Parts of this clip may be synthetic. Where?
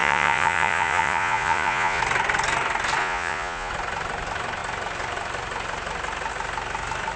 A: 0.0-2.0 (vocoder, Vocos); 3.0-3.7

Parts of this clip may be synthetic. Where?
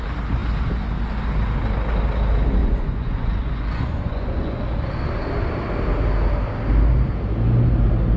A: 2.6-4.6 (vocoder, Vocos)